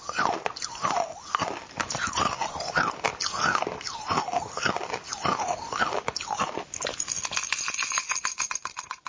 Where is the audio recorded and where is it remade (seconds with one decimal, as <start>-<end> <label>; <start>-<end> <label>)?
0.0-9.1 recorded